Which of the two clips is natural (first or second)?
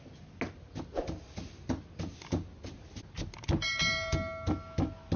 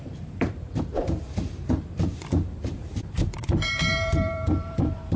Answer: first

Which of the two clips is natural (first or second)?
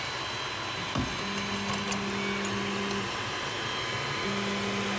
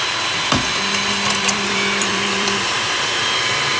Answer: first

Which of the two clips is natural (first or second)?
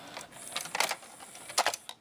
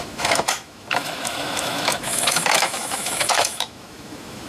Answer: first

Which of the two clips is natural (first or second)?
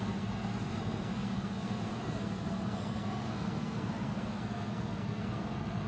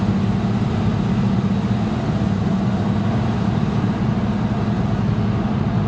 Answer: second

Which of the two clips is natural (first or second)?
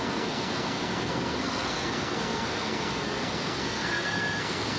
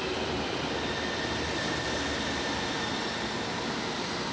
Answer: second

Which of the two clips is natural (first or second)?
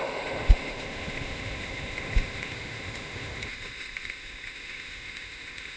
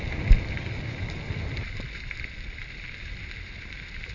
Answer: second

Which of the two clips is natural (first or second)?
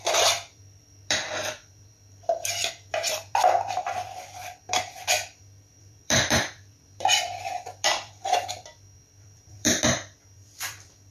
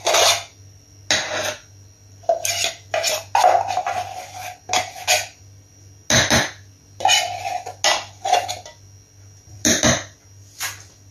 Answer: second